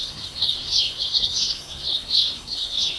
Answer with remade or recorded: remade